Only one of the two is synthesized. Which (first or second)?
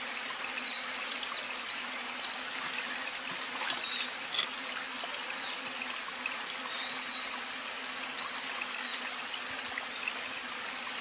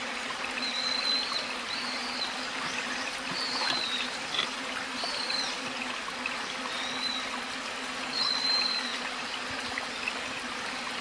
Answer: second